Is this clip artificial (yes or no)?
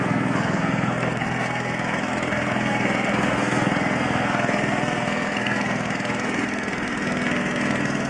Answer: yes